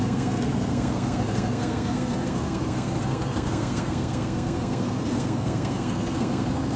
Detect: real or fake fake